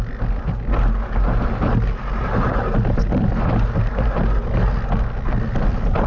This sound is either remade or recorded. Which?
recorded